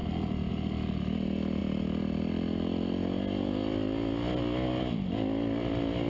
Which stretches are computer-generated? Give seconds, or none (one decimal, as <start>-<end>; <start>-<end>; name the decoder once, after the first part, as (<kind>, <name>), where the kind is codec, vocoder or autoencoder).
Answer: none